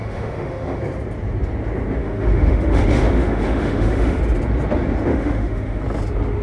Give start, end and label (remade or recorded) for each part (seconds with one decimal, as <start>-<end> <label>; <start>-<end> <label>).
0.0-0.8 remade; 0.8-2.0 recorded; 2.0-4.2 remade; 4.2-5.1 recorded; 5.1-5.8 remade; 5.8-6.4 recorded